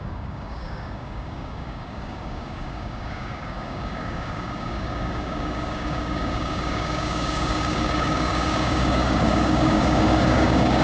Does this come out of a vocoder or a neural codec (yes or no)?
yes